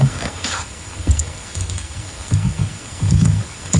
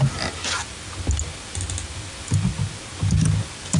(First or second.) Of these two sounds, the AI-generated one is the first